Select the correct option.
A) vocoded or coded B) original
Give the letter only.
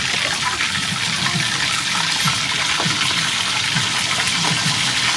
B